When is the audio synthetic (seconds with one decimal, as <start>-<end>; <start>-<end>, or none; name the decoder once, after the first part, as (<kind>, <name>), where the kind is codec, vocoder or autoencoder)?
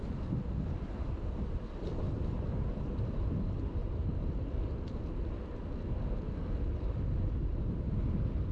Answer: 0.0-3.8 (vocoder, BigVGAN v2); 6.1-8.5